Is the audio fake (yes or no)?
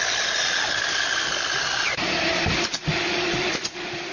no